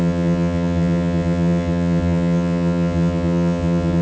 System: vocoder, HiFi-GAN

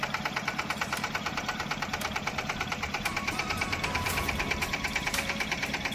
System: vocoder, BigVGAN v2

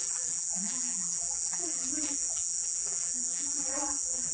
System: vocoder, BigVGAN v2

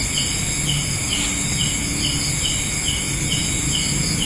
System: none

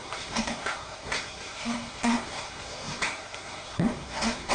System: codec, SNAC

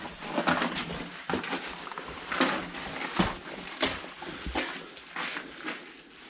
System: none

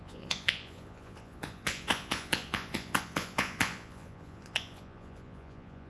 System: vocoder, Vocos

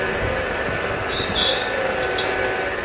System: none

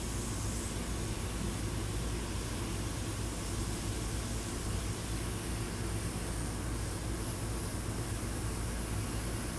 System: none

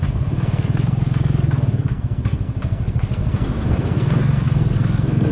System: codec, SNAC